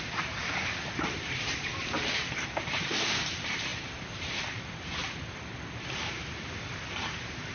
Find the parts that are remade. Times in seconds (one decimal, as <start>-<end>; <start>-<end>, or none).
0.0-1.7; 2.3-5.0; 5.8-7.5